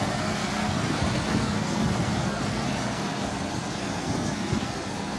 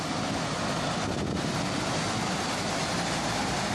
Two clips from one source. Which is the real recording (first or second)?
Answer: second